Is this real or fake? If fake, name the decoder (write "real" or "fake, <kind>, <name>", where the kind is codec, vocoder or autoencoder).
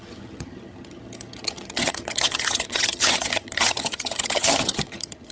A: fake, vocoder, HiFi-GAN